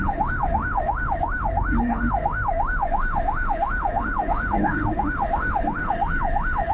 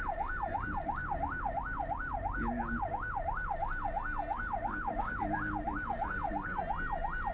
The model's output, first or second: first